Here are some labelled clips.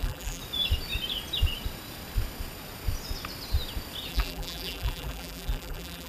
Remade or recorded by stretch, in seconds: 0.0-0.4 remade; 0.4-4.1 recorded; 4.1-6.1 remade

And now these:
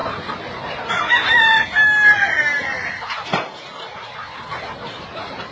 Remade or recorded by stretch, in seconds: 0.0-2.5 recorded; 2.5-5.5 remade

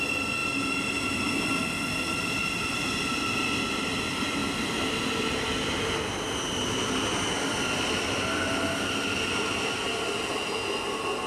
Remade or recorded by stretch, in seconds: 0.0-0.4 recorded; 0.4-1.3 remade; 1.3-2.4 recorded; 2.4-3.1 remade; 3.1-11.3 recorded

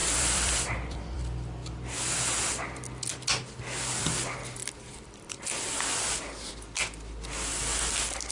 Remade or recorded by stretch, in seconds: 0.0-1.2 remade; 1.2-4.6 recorded; 4.6-5.4 remade; 5.4-8.3 recorded

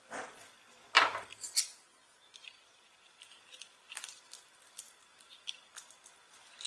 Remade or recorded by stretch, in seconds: 0.0-1.7 recorded; 1.7-5.7 remade; 5.7-6.7 recorded

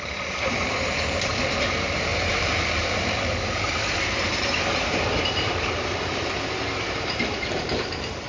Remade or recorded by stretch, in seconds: 0.0-8.3 remade